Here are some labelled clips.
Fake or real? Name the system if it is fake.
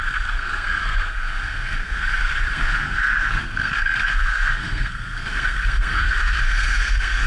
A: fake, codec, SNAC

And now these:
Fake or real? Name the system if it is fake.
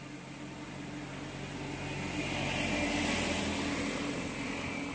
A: real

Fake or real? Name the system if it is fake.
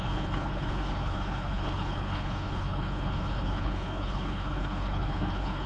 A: fake, codec, HILCodec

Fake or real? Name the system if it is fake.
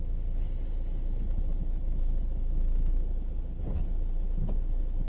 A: real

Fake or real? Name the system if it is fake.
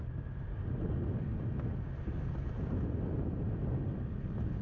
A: real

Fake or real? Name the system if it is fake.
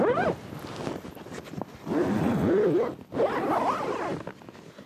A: real